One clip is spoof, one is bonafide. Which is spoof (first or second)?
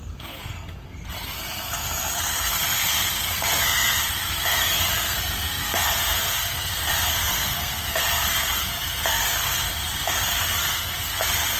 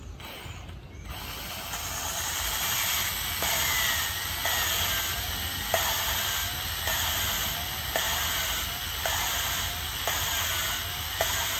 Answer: first